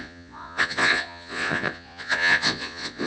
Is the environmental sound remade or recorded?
remade